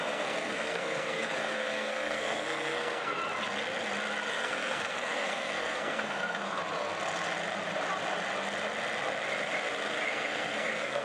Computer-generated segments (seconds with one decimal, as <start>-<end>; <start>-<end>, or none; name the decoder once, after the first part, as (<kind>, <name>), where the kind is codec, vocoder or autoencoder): 0.0-3.2 (codec, SNAC); 4.3-6.6; 10.1-11.0